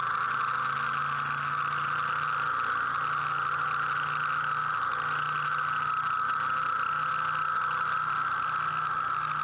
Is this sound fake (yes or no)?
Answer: no